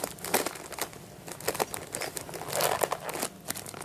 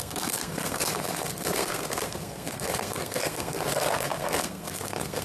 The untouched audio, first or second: first